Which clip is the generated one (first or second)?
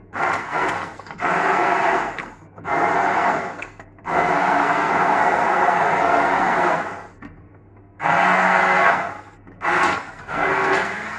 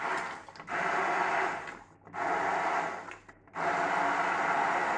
first